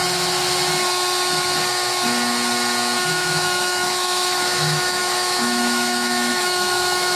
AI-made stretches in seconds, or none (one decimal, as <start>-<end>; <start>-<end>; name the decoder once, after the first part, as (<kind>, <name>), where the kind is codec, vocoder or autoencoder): 3.1-7.2 (autoencoder, DAC-VAE)

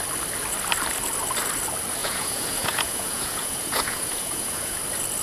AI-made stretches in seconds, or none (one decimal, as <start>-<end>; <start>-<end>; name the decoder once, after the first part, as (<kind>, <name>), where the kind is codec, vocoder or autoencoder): 2.0-4.8 (vocoder, Vocos)